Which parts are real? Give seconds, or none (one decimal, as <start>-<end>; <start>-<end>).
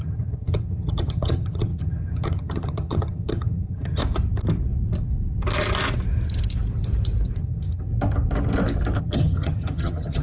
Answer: 4.0-7.4; 7.9-9.0